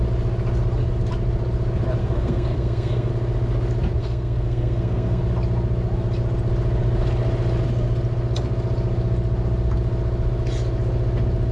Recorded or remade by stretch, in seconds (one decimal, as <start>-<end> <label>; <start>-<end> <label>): 0.0-2.0 recorded; 2.0-3.1 remade; 3.1-4.0 recorded; 4.0-5.2 remade; 5.2-11.5 recorded